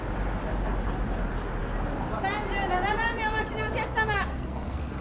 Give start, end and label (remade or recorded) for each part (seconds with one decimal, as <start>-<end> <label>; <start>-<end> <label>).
0.0-4.3 recorded; 4.3-5.0 remade

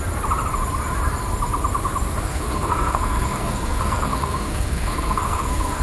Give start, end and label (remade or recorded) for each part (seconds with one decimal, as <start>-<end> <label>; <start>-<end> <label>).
0.0-2.3 recorded; 2.3-5.8 remade

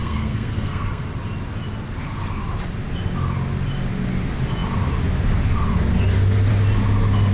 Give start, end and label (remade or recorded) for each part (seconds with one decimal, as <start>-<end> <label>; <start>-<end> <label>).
0.0-1.0 remade; 1.0-7.3 recorded

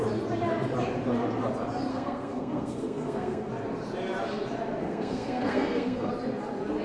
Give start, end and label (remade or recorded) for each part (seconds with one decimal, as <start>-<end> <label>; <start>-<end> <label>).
0.0-1.9 recorded; 1.9-3.5 remade; 3.5-4.8 recorded; 4.8-6.1 remade; 6.1-6.8 recorded

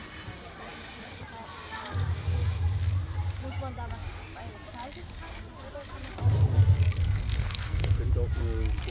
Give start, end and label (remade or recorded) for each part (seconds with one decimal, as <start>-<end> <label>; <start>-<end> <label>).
0.0-7.0 recorded; 7.0-8.0 remade; 8.0-8.9 recorded

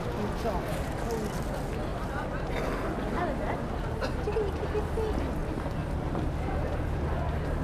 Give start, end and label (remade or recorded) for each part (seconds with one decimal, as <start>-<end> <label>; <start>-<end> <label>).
0.0-7.6 recorded